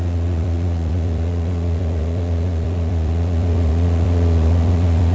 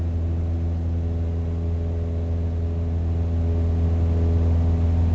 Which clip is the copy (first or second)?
first